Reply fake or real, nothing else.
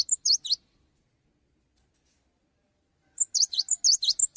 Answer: real